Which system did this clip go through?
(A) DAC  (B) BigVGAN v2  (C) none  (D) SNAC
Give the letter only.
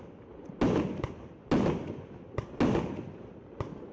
C